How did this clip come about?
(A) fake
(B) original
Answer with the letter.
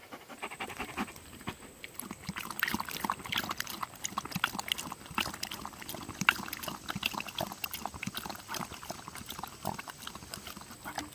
B